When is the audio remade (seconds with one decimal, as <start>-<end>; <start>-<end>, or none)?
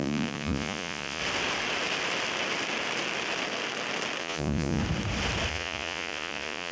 0.0-1.2; 4.2-4.8; 5.5-6.7